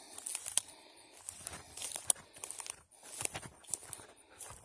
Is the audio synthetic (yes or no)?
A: no